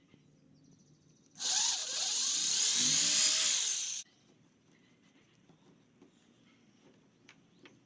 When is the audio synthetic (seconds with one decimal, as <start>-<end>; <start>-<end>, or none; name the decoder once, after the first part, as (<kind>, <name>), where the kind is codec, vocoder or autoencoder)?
1.8-2.5 (vocoder, BigVGAN v2); 3.7-5.4